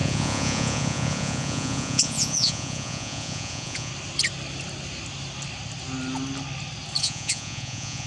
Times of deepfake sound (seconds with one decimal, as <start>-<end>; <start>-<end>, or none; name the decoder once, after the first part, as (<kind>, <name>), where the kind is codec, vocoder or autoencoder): 0.0-3.9 (vocoder, Vocos); 7.0-8.1

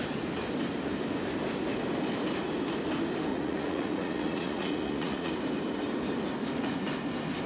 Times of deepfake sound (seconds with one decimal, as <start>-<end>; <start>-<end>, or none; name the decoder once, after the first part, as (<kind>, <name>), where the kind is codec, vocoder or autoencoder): 3.3-5.3 (vocoder, Vocos)

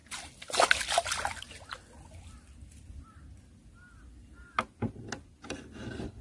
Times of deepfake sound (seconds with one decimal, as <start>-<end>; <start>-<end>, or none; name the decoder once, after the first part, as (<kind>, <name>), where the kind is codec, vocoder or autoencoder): none

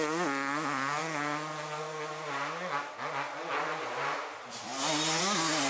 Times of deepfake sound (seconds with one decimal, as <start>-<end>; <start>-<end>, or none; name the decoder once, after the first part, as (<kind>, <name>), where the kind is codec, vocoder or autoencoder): none

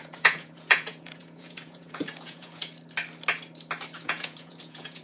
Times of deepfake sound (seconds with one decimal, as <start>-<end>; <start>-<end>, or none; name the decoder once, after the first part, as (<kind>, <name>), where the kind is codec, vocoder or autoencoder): 0.0-2.6 (vocoder, Vocos); 4.0-5.0

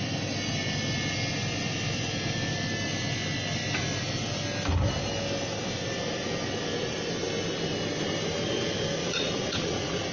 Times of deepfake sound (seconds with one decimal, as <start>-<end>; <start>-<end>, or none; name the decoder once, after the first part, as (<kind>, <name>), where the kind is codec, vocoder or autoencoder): 9.0-10.1 (vocoder, Vocos)

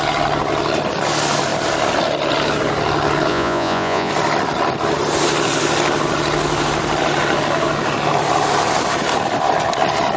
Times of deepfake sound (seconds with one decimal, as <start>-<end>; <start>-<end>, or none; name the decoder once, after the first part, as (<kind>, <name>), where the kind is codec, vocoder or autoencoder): 3.3-4.1 (vocoder, Vocos)

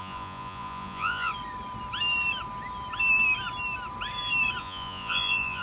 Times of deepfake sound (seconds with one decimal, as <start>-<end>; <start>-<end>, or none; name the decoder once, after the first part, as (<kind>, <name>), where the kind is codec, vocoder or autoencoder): 0.0-1.3 (vocoder, Vocos); 4.6-5.6